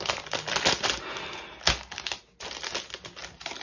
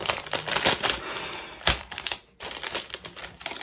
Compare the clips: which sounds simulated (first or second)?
second